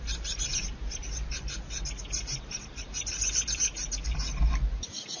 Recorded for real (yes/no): yes